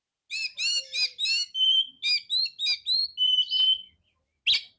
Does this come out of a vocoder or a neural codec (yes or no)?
no